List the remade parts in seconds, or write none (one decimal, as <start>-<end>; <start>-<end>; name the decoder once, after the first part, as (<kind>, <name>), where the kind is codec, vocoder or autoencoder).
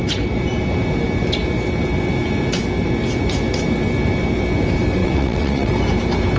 5.0-5.7 (vocoder, WaveNeXt)